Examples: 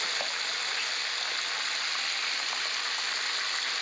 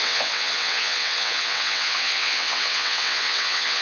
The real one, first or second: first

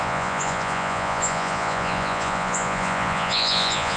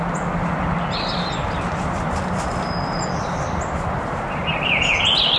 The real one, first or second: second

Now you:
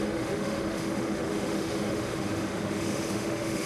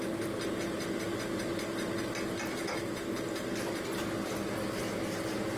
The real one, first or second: second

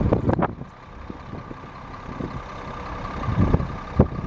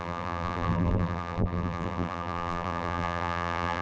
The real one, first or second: first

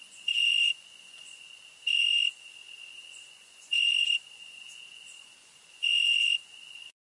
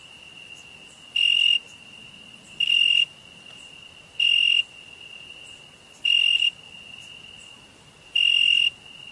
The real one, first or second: second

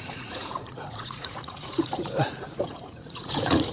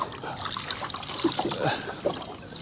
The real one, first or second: second